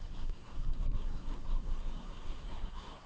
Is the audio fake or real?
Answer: fake